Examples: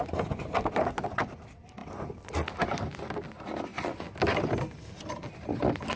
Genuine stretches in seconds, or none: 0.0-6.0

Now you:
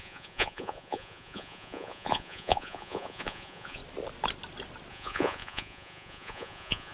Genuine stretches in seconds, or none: 3.8-4.9

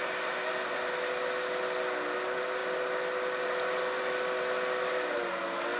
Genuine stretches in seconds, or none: 0.0-5.8

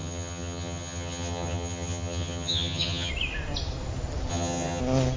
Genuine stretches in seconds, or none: 3.1-4.3; 4.8-5.2

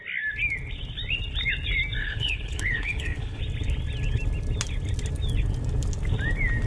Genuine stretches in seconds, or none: 0.0-2.0; 3.4-6.7

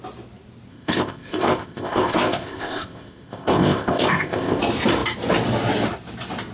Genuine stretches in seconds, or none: 0.0-0.7; 4.6-6.5

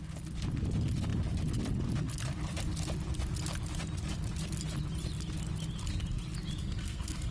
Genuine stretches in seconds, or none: 0.0-6.6

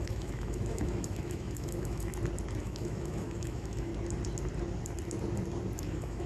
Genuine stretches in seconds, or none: 2.1-2.6; 3.9-5.8